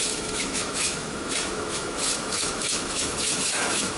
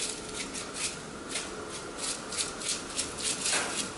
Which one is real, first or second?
second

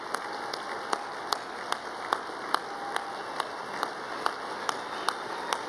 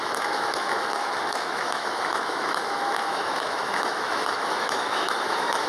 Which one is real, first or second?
first